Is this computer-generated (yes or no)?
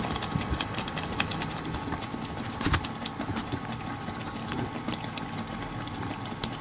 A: no